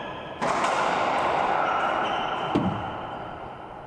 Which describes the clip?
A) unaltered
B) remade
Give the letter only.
B